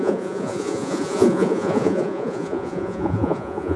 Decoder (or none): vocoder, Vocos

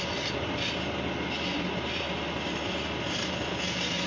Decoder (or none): none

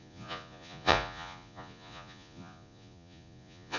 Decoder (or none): vocoder, Vocos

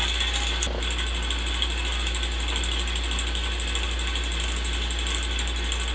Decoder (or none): none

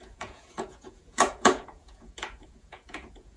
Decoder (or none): vocoder, Vocos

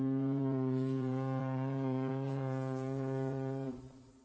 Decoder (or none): vocoder, Vocos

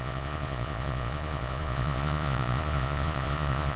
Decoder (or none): vocoder, Vocos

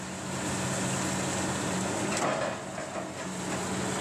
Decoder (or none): none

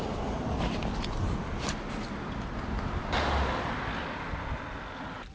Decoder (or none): none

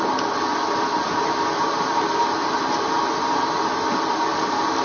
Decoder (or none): none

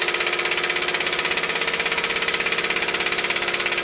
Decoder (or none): none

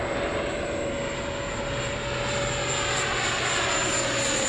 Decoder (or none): none